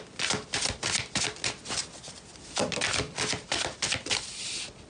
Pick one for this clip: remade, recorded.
recorded